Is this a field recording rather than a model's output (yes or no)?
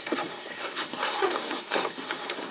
no